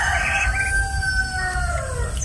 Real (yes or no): yes